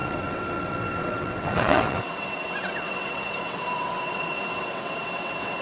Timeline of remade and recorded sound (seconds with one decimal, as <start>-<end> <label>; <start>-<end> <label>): 0.0-5.6 remade